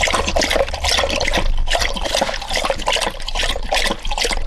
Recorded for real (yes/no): yes